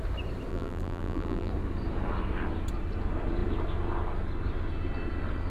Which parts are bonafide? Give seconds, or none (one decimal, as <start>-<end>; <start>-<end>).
0.0-0.5; 1.5-5.5